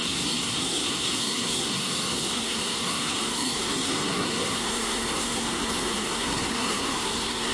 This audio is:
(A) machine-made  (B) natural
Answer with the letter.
A